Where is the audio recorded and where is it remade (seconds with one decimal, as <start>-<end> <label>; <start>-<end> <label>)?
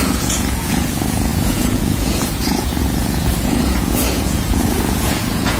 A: 0.0-5.6 remade